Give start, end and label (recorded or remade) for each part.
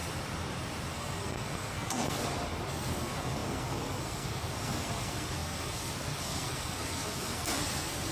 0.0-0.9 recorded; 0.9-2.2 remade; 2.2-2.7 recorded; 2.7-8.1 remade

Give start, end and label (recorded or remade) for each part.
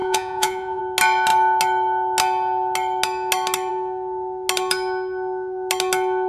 0.0-0.8 remade; 0.8-6.3 recorded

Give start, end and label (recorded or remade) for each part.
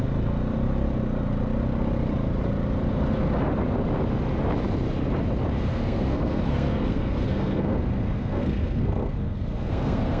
0.0-5.7 recorded; 5.7-10.2 remade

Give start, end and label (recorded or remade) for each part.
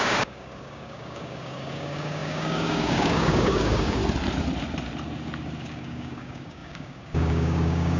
0.0-4.0 remade; 4.0-5.6 recorded; 5.6-8.0 remade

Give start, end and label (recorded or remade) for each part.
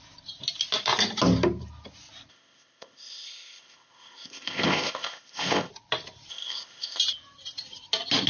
0.0-2.3 recorded; 2.3-5.7 remade; 5.7-6.3 recorded; 6.3-7.0 remade; 7.0-8.3 recorded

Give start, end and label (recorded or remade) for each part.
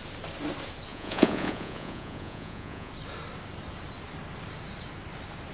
0.0-0.9 recorded; 0.9-2.9 remade; 2.9-5.5 recorded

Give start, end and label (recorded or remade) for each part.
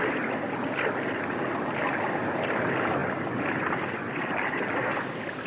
0.0-5.5 recorded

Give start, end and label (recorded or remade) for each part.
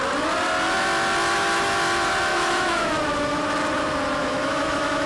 0.0-2.3 recorded; 2.3-2.9 remade; 2.9-4.2 recorded; 4.2-5.1 remade